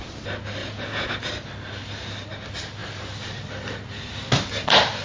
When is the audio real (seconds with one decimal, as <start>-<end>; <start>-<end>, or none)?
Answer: 0.0-0.6; 1.3-5.0

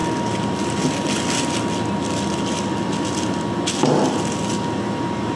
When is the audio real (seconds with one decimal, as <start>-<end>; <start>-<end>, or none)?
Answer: 0.0-5.4

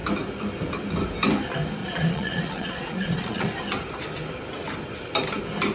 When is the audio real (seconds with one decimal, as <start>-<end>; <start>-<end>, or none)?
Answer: 0.0-1.8; 3.5-5.7

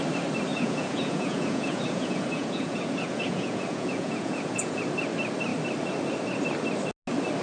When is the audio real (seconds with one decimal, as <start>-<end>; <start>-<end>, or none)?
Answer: 0.0-0.5; 4.8-7.4

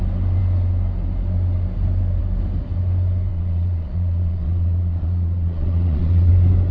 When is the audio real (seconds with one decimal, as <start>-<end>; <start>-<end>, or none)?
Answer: 0.0-3.3; 6.3-6.7

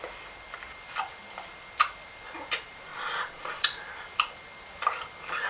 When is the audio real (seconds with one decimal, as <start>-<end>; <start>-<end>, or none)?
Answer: 0.0-2.9; 3.8-5.5

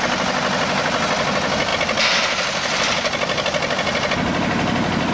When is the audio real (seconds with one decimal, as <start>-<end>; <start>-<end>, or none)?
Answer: 0.0-5.1